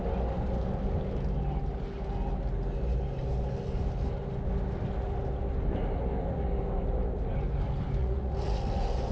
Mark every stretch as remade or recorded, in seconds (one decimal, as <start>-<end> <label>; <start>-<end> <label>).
0.0-8.0 recorded; 8.0-8.6 remade; 8.6-9.1 recorded